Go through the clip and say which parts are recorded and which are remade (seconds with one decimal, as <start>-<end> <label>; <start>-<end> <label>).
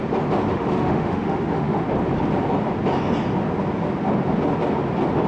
0.0-0.5 recorded; 0.5-1.8 remade; 1.8-5.3 recorded